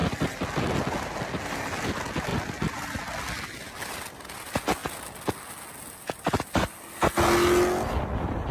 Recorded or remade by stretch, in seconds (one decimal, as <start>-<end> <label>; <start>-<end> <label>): 0.0-8.5 recorded